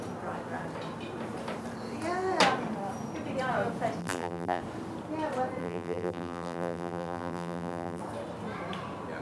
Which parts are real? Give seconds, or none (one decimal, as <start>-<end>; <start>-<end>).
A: 0.0-4.0; 4.6-5.6; 8.0-9.2